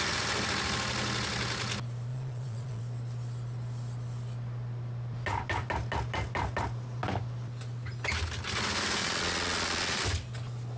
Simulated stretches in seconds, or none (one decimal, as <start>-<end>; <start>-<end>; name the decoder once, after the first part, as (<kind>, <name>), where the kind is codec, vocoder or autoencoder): 2.1-2.8 (vocoder, Vocos); 9.0-10.0